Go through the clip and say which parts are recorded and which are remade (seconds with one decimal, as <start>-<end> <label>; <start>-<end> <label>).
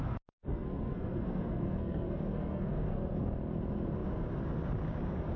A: 0.0-0.4 recorded; 0.4-3.2 remade; 3.2-5.4 recorded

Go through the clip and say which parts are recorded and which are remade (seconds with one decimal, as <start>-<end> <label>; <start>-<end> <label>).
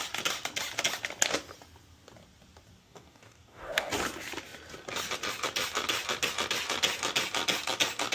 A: 0.0-2.8 recorded; 2.8-3.9 remade; 3.9-8.1 recorded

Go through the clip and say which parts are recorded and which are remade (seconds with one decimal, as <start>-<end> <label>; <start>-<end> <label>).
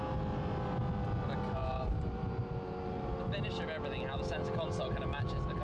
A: 0.0-1.6 recorded; 1.6-3.3 remade; 3.3-5.6 recorded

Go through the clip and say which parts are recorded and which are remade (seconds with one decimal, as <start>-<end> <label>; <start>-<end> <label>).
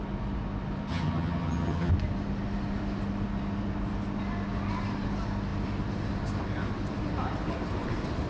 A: 0.0-0.9 recorded; 0.9-1.9 remade; 1.9-8.3 recorded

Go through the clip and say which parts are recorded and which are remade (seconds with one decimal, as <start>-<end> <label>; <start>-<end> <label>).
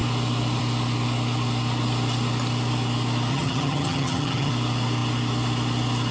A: 0.0-3.3 recorded; 3.3-4.5 remade; 4.5-6.1 recorded